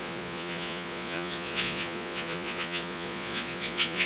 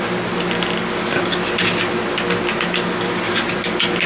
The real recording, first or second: second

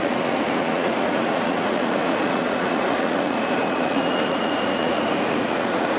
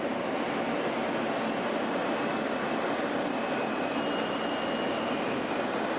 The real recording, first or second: second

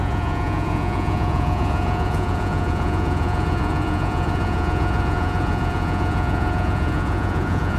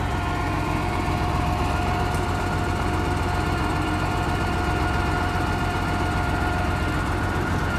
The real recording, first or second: second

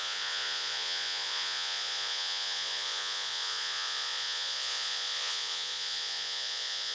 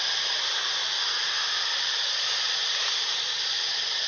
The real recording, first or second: second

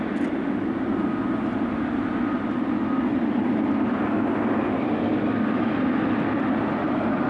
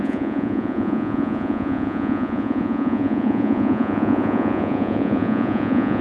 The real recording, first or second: first